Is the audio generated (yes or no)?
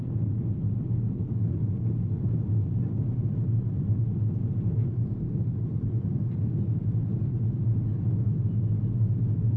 no